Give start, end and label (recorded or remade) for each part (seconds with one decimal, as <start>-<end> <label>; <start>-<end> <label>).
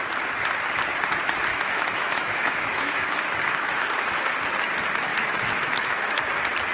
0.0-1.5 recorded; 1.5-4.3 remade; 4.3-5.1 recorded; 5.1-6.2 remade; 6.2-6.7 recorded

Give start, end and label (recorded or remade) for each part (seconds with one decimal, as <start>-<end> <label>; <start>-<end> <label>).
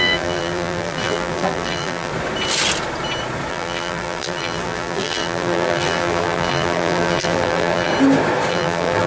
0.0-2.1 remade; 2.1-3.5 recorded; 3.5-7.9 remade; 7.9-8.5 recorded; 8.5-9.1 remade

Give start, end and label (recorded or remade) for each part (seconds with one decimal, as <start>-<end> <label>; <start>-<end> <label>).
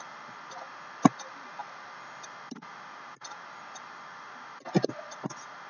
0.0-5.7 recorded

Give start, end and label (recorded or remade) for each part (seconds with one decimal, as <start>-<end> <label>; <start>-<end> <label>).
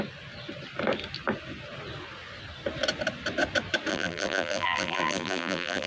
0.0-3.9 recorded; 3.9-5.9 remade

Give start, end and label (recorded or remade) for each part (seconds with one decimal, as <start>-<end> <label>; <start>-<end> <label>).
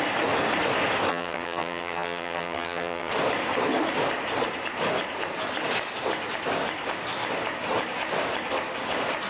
0.0-1.1 recorded; 1.1-3.1 remade; 3.1-9.3 recorded